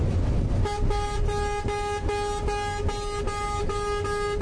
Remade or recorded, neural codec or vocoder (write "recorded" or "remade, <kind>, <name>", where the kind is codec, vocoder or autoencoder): recorded